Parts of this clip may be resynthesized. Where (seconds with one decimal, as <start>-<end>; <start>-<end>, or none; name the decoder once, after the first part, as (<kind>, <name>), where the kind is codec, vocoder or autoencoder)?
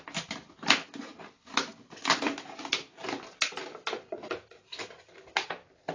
none